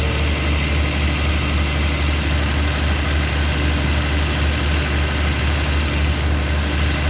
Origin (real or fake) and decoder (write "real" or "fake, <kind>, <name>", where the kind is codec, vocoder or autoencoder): real